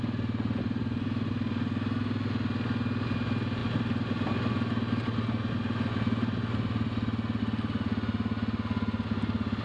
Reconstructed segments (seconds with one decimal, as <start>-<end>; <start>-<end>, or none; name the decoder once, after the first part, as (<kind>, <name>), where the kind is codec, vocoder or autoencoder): none